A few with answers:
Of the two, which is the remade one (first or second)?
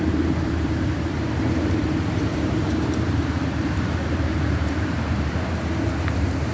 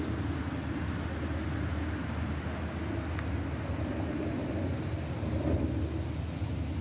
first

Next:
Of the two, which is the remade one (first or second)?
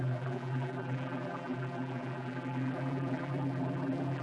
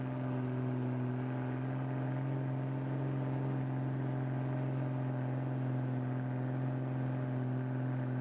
first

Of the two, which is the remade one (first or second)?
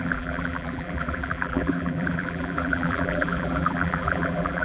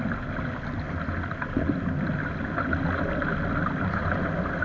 first